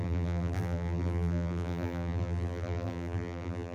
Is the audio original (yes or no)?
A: no